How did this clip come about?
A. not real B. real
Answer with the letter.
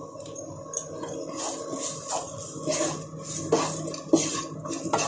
B